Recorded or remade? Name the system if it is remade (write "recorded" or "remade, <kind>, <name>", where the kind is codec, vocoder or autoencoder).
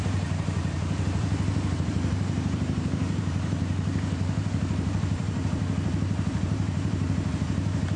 remade, vocoder, BigVGAN v2